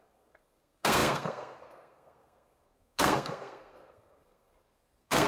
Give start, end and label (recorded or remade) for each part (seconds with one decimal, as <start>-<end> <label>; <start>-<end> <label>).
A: 0.0-5.3 remade